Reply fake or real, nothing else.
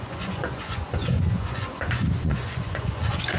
fake